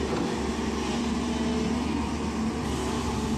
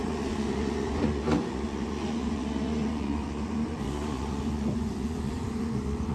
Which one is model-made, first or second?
second